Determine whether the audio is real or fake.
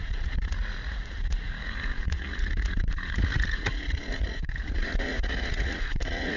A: fake